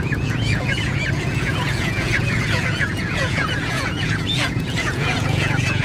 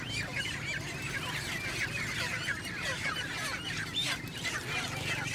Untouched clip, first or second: second